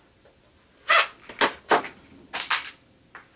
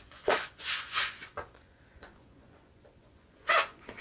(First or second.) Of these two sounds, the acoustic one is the first